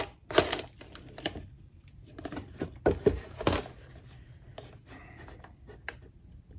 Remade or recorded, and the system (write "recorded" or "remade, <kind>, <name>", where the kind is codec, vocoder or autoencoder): recorded